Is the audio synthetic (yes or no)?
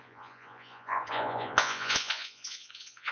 yes